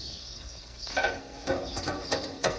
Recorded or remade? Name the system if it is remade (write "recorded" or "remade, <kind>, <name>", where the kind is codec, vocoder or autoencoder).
remade, codec, SNAC